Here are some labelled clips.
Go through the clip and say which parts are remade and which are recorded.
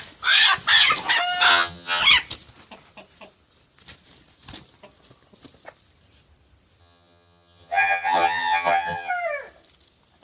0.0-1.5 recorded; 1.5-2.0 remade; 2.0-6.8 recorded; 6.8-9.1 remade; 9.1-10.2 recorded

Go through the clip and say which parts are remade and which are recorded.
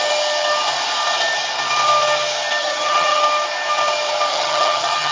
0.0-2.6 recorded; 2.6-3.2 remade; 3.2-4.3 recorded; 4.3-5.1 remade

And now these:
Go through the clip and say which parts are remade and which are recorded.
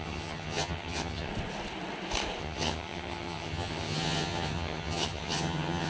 0.0-1.3 remade; 1.3-2.4 recorded; 2.4-5.9 remade